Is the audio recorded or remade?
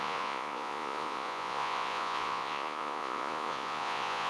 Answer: remade